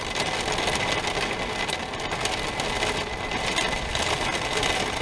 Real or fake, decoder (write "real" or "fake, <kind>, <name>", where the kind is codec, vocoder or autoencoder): real